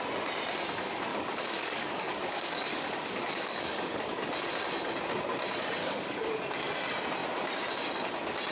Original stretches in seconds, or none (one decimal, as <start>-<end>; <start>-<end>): 0.0-1.1; 4.0-5.8; 6.4-8.5